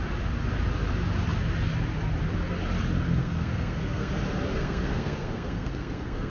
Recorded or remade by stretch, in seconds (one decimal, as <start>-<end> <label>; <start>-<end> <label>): 0.0-3.2 recorded; 3.2-4.1 remade; 4.1-4.5 recorded; 4.5-6.3 remade

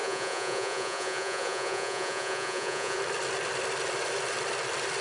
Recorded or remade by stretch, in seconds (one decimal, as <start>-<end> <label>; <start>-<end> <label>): 0.0-3.0 remade; 3.0-5.0 recorded

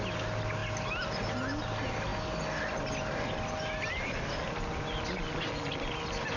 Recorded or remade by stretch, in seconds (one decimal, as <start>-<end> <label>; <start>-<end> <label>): 0.0-6.4 recorded